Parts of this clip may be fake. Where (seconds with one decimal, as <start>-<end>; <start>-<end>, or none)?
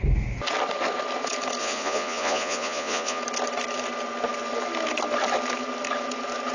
1.6-3.2